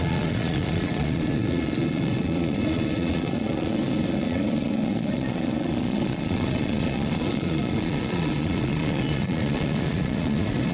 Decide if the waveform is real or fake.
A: fake